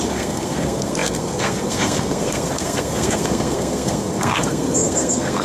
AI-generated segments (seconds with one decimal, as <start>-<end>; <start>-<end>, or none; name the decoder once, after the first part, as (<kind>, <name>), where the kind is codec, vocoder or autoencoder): 0.0-5.4 (codec, SNAC)